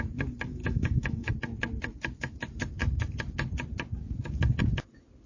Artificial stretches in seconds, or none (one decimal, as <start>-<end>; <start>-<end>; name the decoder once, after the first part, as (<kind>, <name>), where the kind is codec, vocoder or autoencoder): 0.6-1.3 (autoencoder, DAC-VAE)